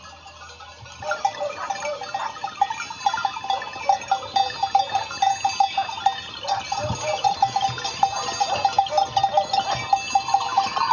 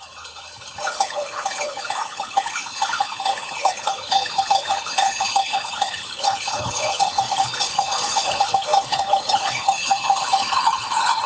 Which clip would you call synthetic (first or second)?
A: second